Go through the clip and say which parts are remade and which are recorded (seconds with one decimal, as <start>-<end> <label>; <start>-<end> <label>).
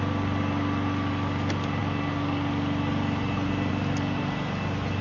0.0-5.0 recorded